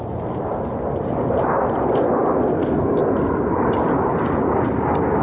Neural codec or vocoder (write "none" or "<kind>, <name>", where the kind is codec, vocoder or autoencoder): none